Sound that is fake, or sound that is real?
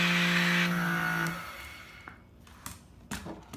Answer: real